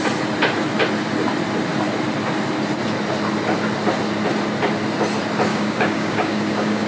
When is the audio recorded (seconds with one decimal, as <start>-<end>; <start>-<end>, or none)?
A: 0.0-5.5